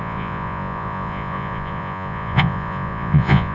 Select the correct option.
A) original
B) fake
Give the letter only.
B